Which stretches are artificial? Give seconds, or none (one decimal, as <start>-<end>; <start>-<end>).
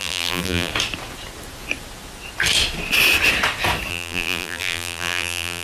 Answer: 0.0-0.7; 3.9-5.6